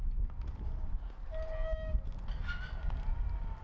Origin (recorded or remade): recorded